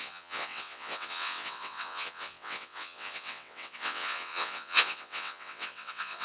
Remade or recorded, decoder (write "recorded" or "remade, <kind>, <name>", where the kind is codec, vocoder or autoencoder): remade, vocoder, WaveNeXt